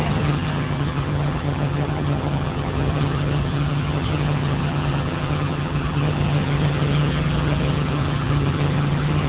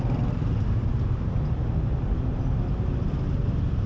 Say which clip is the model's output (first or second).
first